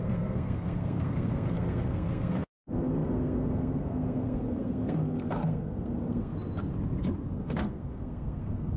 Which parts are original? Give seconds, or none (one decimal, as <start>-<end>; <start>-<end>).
6.3-7.3